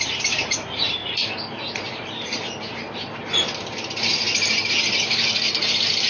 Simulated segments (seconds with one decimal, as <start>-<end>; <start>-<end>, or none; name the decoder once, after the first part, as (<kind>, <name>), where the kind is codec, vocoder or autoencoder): 1.0-4.7 (vocoder, BigVGAN v2)